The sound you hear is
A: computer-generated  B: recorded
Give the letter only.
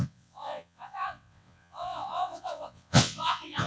A